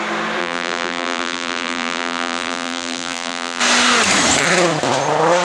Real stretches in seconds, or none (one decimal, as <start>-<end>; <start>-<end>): 0.0-0.4; 3.6-5.4